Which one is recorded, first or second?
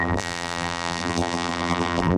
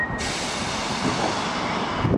second